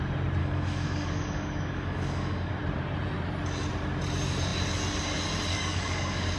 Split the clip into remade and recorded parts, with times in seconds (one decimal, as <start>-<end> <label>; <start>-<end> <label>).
0.0-0.4 recorded; 0.4-2.5 remade; 2.5-5.5 recorded; 5.5-6.4 remade